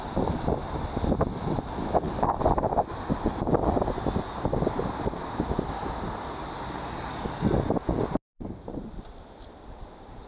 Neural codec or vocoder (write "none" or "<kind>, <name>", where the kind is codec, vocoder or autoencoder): none